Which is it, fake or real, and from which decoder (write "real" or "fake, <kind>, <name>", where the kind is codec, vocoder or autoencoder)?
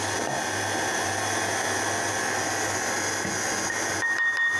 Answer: real